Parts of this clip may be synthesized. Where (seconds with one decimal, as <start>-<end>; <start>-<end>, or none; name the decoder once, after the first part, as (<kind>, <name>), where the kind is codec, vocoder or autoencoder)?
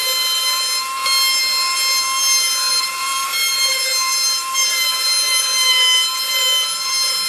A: 0.0-0.6 (vocoder, BigVGAN v2); 2.7-5.8